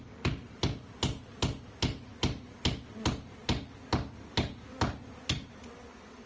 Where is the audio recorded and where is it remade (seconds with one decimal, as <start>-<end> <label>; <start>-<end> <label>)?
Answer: 0.0-6.3 recorded